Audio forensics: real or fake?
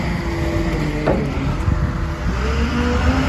real